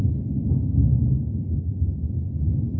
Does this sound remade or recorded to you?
recorded